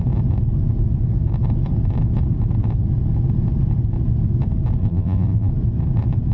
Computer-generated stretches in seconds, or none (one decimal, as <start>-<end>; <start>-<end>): 4.8-5.5